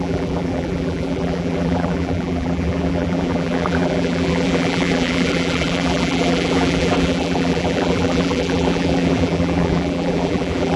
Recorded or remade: remade